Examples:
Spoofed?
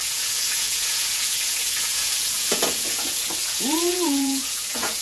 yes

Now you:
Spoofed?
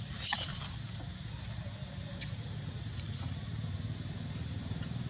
no